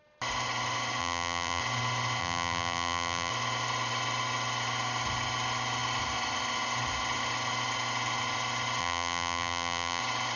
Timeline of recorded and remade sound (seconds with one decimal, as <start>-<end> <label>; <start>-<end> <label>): 0.0-1.0 recorded; 1.0-1.6 remade; 1.6-2.2 recorded; 2.2-3.3 remade; 3.3-8.8 recorded; 8.8-10.0 remade; 10.0-10.4 recorded